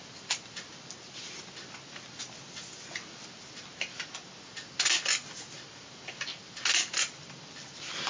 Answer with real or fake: real